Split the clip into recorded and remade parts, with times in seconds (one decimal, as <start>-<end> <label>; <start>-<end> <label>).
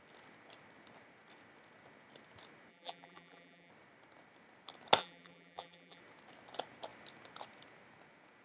0.0-2.7 recorded; 2.7-3.7 remade; 3.7-5.0 recorded; 5.0-6.0 remade; 6.0-8.4 recorded